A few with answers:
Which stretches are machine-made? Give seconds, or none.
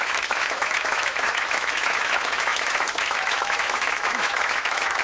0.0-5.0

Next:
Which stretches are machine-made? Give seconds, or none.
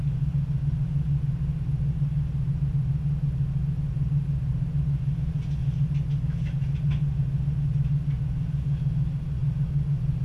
none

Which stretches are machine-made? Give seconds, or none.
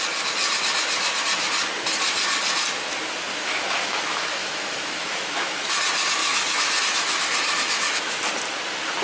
3.3-5.7; 6.2-8.2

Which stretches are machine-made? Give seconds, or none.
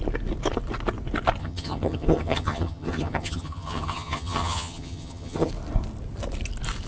1.4-5.5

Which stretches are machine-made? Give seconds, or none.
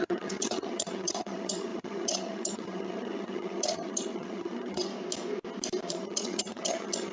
0.0-4.9; 5.9-7.1